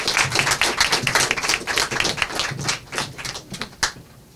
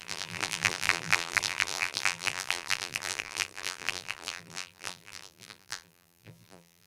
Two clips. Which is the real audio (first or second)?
first